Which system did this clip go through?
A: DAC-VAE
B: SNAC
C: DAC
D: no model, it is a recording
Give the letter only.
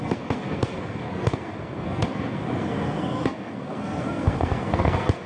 B